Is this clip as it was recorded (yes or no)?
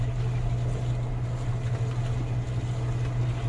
yes